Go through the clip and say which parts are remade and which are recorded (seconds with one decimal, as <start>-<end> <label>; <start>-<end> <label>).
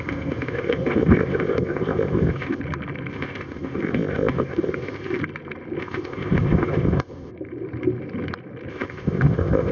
0.0-2.6 remade; 2.6-3.1 recorded; 3.1-5.2 remade; 5.2-5.8 recorded; 5.8-7.3 remade; 7.3-8.7 recorded; 8.7-9.7 remade